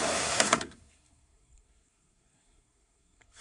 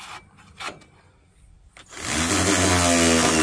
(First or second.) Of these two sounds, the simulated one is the first